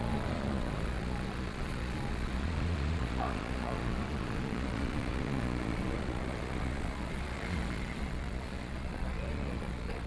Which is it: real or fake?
fake